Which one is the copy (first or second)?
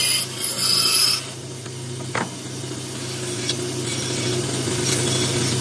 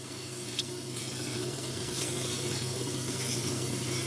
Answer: second